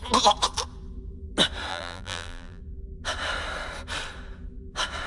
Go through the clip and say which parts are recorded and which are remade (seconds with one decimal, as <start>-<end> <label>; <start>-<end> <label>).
0.0-1.7 recorded; 1.7-2.6 remade; 2.6-5.1 recorded